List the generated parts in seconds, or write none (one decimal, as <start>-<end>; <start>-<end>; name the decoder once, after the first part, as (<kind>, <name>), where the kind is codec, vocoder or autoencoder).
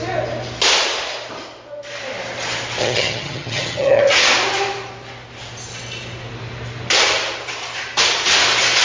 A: 2.8-4.0 (vocoder, HiFi-GAN)